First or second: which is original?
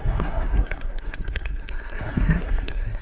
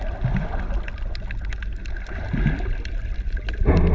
second